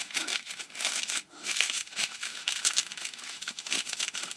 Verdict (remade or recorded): remade